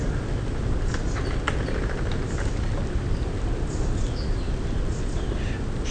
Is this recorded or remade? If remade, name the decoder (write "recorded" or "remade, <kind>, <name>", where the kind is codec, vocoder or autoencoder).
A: recorded